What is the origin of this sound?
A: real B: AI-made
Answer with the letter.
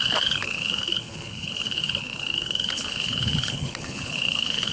B